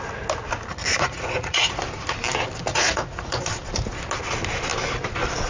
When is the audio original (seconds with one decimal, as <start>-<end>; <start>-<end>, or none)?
0.0-0.9; 1.8-2.7; 3.4-5.5